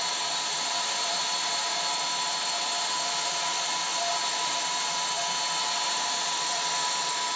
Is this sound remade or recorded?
remade